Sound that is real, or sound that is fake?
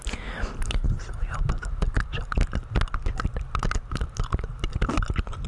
real